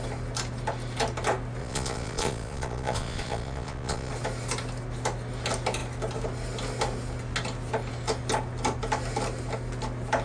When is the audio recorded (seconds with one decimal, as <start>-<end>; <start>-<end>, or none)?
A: 0.0-1.6; 4.1-10.2